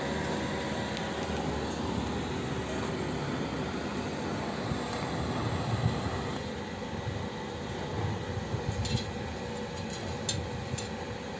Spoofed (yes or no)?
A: no